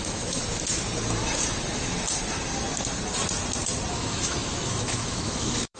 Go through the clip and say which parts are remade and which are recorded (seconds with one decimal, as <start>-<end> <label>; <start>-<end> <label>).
0.0-0.4 remade; 0.4-3.9 recorded; 3.9-5.8 remade